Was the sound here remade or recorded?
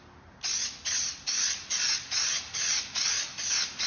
recorded